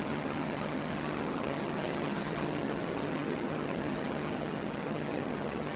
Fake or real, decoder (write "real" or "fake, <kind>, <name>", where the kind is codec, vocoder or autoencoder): fake, vocoder, HiFi-GAN